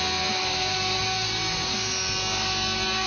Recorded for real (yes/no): yes